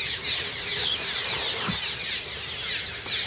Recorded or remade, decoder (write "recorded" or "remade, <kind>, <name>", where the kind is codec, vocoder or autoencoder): recorded